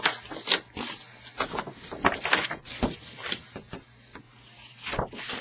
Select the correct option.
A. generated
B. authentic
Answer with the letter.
B